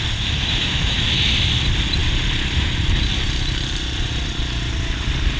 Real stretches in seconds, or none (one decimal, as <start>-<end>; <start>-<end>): 0.0-0.6; 1.1-5.4